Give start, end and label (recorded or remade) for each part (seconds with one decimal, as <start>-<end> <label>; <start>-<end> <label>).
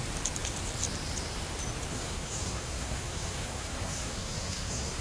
0.0-1.9 recorded; 1.9-5.0 remade